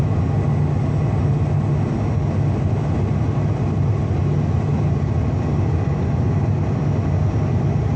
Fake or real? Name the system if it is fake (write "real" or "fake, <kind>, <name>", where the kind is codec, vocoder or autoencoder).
real